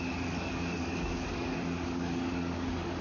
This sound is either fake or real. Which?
fake